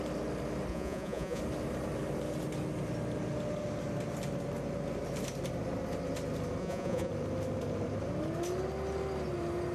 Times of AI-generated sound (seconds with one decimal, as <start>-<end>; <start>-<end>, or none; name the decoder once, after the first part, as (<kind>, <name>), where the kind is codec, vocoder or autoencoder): 0.7-1.4 (vocoder, Vocos); 6.6-7.1

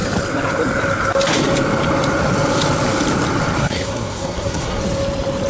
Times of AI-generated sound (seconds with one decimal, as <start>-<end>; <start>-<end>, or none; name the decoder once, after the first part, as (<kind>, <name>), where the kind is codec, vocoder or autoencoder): 3.6-4.8 (codec, SNAC)

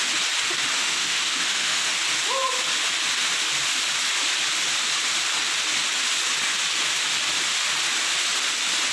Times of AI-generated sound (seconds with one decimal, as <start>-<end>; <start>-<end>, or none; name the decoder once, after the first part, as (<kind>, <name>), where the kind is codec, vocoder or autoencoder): 0.8-1.9 (autoencoder, DAC-VAE)

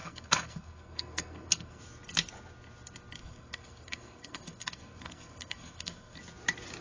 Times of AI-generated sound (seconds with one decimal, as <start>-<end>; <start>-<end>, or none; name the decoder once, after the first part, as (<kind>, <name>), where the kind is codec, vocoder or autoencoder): 0.0-1.8 (codec, SNAC); 3.2-6.2